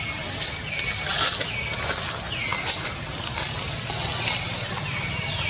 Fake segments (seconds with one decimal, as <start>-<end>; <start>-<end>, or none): none